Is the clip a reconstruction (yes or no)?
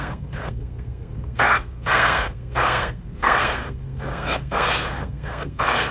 yes